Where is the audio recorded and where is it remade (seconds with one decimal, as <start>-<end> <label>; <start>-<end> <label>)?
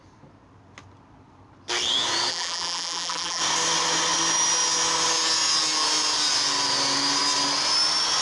0.0-2.3 recorded; 2.3-3.4 remade; 3.4-8.2 recorded